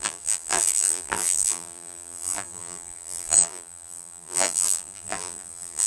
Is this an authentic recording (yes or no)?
no